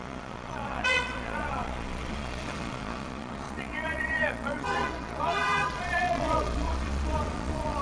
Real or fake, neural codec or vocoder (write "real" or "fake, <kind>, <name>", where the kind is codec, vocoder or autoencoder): fake, vocoder, Vocos